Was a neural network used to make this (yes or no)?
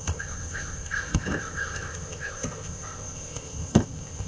yes